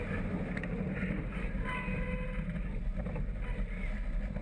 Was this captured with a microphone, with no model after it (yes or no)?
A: yes